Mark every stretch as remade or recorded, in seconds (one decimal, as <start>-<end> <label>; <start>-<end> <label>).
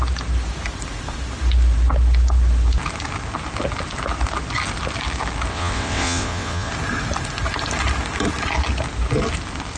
0.0-5.5 recorded; 5.5-6.7 remade; 6.7-9.8 recorded